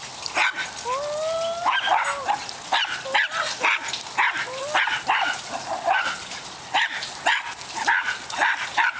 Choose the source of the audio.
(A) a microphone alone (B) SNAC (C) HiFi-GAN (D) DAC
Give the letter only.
A